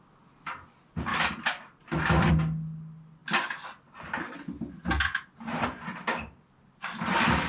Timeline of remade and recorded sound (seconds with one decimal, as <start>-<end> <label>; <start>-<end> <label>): 0.0-7.5 recorded